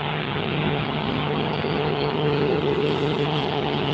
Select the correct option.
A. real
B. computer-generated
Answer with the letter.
B